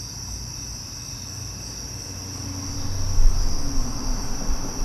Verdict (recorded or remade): recorded